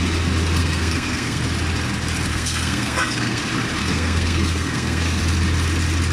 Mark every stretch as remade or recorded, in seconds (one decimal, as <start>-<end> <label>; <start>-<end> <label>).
0.0-0.6 recorded; 0.6-1.4 remade; 1.4-2.3 recorded; 2.3-3.4 remade; 3.4-3.8 recorded; 3.8-5.2 remade; 5.2-6.1 recorded